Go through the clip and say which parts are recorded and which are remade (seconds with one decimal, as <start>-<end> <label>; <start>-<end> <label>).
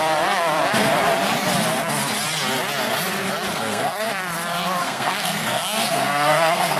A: 0.0-3.5 recorded; 3.5-4.1 remade; 4.1-4.8 recorded; 4.8-6.8 remade